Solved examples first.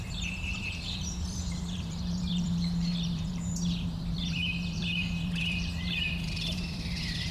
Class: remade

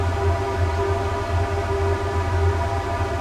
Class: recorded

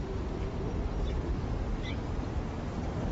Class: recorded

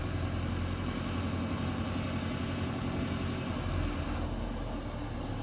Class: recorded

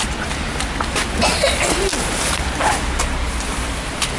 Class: recorded